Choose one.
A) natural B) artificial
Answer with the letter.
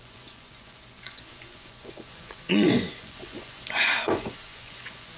B